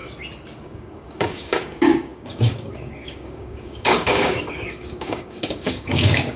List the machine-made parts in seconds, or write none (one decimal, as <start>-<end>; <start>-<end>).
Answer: 0.6-6.4